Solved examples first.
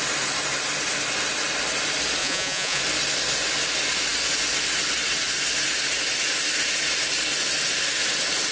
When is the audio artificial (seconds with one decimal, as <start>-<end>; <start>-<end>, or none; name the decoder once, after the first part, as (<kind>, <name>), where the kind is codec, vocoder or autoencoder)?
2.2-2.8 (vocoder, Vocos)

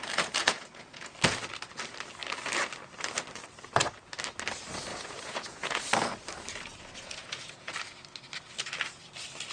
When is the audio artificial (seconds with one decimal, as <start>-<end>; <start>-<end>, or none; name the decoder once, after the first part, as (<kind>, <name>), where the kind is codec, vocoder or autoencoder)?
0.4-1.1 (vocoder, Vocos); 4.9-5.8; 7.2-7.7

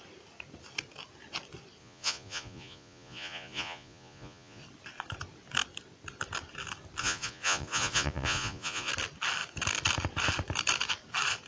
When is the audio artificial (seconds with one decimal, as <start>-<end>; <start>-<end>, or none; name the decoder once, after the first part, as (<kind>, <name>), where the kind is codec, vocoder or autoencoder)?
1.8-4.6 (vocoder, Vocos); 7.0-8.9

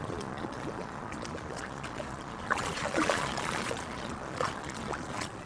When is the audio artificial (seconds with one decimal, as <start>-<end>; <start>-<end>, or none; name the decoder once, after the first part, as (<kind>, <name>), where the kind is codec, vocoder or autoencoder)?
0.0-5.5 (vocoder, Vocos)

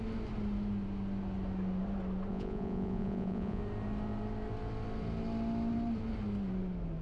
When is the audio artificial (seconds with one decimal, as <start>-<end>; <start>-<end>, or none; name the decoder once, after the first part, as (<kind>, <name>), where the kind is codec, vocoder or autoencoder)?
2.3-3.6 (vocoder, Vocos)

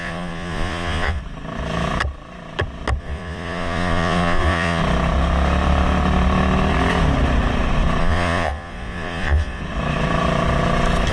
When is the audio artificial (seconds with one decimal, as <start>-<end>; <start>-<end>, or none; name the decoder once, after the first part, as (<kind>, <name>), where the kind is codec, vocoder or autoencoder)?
0.0-1.2 (vocoder, Vocos); 3.0-4.8; 8.0-9.6

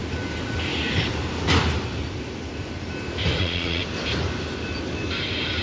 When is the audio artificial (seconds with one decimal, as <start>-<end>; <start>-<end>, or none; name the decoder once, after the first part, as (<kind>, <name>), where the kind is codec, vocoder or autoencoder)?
3.4-3.8 (vocoder, Vocos)